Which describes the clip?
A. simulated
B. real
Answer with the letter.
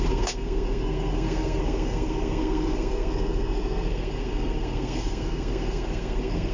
A